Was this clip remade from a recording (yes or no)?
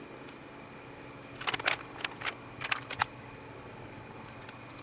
no